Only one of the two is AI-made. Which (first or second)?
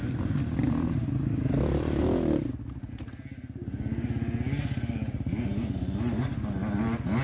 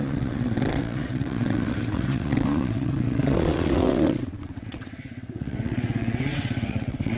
second